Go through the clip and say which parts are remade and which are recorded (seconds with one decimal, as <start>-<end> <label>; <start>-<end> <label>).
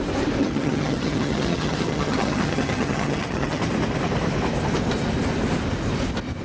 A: 0.0-0.4 recorded; 0.4-3.6 remade; 3.6-6.4 recorded